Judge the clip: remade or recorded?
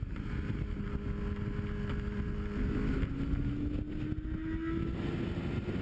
recorded